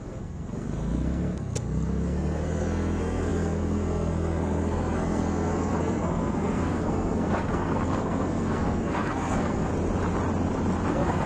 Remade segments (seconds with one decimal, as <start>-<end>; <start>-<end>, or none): 0.0-9.7; 10.9-11.3